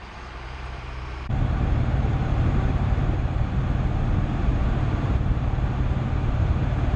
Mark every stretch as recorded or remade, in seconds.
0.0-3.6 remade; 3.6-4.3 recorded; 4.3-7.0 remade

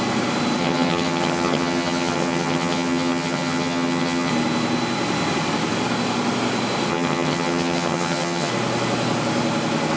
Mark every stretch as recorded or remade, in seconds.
0.0-0.6 recorded; 0.6-4.3 remade; 4.3-6.9 recorded; 6.9-8.5 remade; 8.5-10.0 recorded

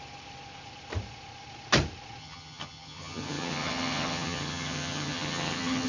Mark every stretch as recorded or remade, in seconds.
0.0-2.2 recorded; 2.2-5.9 remade

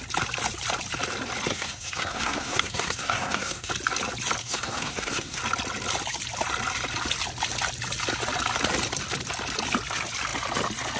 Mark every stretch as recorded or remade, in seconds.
0.0-1.5 recorded; 1.5-3.7 remade; 3.7-4.4 recorded; 4.4-5.4 remade; 5.4-11.0 recorded

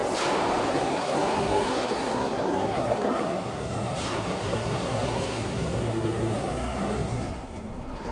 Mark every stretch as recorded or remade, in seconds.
0.0-0.7 recorded; 0.7-8.1 remade

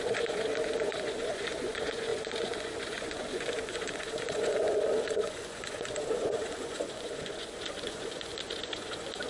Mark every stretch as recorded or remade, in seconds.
0.0-9.3 remade

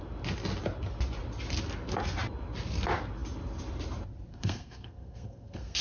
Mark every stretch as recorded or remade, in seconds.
0.0-4.3 recorded; 4.3-5.8 remade

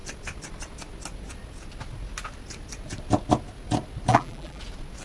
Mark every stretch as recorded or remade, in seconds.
0.0-4.1 recorded; 4.1-4.6 remade; 4.6-5.0 recorded